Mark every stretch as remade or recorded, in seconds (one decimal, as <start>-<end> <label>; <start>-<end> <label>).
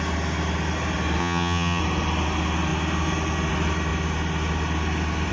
0.0-1.2 recorded; 1.2-1.8 remade; 1.8-5.3 recorded